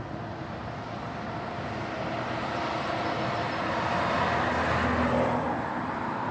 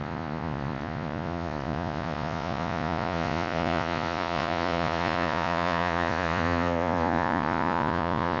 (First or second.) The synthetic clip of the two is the second